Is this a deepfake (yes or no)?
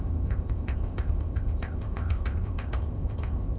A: yes